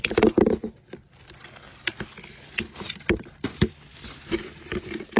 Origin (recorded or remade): recorded